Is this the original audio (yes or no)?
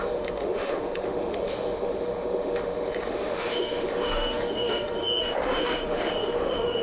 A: no